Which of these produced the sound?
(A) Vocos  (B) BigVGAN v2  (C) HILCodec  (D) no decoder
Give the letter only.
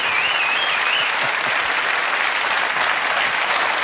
B